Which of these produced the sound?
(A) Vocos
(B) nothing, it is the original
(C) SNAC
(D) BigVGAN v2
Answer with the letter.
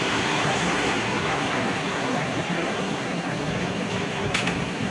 C